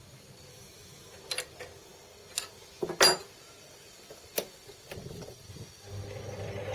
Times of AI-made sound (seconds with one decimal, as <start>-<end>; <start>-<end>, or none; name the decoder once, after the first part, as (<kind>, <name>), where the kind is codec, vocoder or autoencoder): 0.5-1.2 (autoencoder, DAC-VAE)